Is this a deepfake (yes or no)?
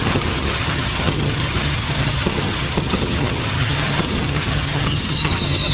yes